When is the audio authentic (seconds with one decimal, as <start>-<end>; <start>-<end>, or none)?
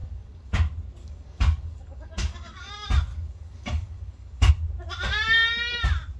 0.5-1.0; 2.7-3.1; 4.5-6.2